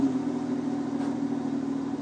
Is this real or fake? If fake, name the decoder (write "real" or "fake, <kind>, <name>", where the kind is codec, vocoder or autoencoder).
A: real